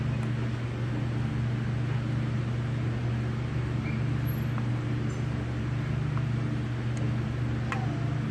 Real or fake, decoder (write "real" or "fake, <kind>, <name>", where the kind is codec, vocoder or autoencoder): real